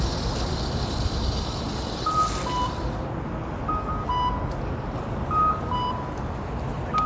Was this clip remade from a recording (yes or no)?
no